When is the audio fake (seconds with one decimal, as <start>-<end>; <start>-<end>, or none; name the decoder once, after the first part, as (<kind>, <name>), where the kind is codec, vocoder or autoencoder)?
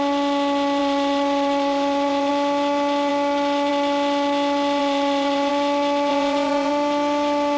0.8-2.3 (vocoder, Vocos); 4.8-5.5; 6.1-6.7